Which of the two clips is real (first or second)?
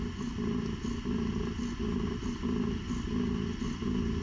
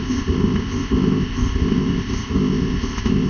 first